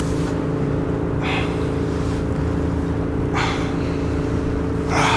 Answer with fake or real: real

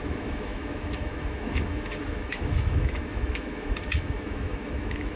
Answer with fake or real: fake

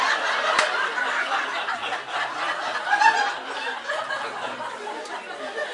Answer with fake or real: real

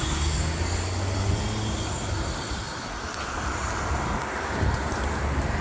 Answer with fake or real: real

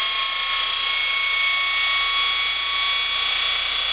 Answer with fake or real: real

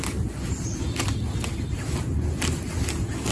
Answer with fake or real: real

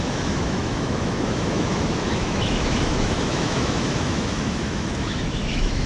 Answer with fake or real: fake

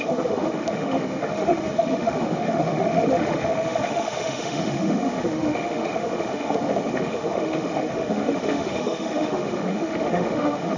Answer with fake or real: fake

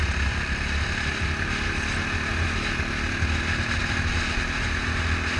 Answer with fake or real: real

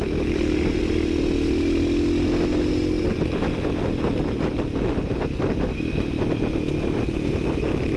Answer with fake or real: real